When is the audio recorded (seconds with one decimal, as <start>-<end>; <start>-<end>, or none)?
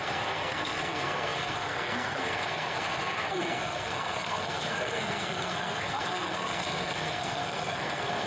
none